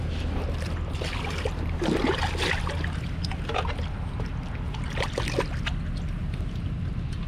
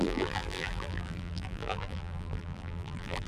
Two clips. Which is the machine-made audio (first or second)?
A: second